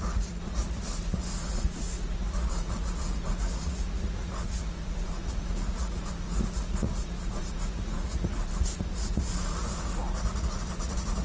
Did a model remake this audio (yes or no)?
yes